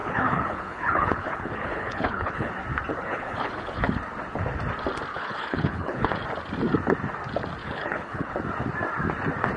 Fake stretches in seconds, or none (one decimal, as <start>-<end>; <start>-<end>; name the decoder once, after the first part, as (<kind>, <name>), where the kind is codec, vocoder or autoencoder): 0.0-2.5 (codec, HILCodec); 2.9-3.9; 5.1-6.1; 7.6-8.3